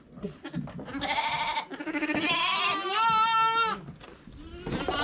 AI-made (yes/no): no